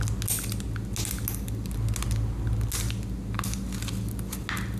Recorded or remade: recorded